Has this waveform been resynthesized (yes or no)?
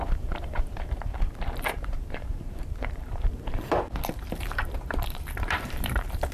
yes